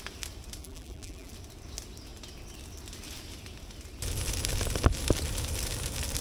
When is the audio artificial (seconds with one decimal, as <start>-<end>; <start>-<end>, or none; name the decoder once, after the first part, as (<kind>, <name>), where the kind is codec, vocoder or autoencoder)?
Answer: 0.6-1.3 (vocoder, BigVGAN v2)

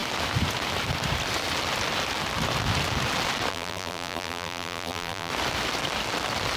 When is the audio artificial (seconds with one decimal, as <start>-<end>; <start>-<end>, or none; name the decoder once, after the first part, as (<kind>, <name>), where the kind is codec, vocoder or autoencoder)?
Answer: 3.5-5.3 (vocoder, BigVGAN v2)

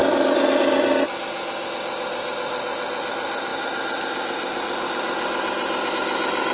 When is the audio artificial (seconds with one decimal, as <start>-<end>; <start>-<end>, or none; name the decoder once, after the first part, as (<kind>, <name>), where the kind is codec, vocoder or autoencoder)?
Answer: none